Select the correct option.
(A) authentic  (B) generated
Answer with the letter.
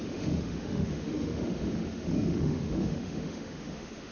B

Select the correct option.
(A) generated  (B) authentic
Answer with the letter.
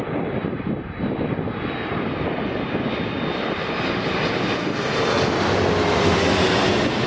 B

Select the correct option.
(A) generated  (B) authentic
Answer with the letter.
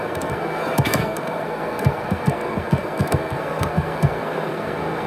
A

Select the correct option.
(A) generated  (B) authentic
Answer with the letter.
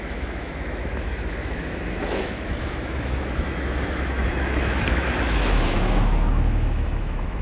A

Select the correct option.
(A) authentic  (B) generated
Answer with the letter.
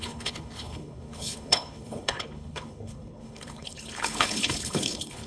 B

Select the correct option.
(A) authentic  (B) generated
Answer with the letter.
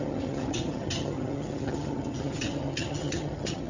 B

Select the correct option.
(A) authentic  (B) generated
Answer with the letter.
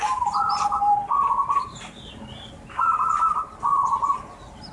A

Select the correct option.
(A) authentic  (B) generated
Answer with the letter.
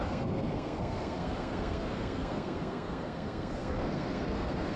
B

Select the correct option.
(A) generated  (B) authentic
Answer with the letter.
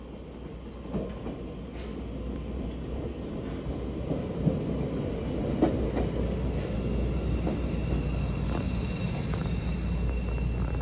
B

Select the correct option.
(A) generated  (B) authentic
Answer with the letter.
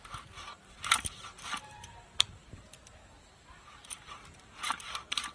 A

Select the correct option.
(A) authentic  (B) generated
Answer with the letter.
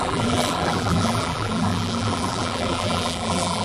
B